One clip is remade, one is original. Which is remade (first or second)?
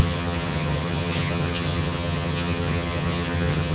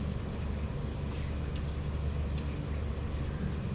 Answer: first